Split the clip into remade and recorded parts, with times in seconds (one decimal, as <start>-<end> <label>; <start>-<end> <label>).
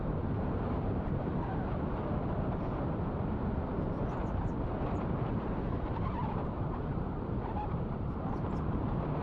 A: 0.0-1.3 remade; 1.3-5.3 recorded; 5.3-9.2 remade